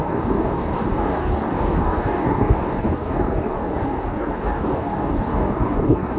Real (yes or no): no